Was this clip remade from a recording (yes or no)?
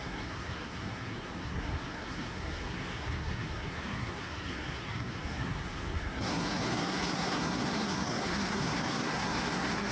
yes